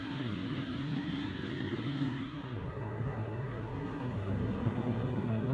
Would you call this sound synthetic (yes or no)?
yes